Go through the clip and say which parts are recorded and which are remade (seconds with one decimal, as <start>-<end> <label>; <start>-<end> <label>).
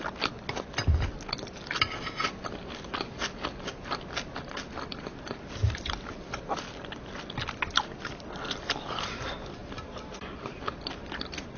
0.0-11.6 recorded